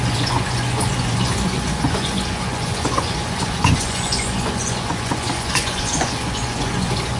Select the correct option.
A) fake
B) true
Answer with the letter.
A